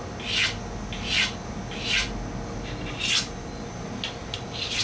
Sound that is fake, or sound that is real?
real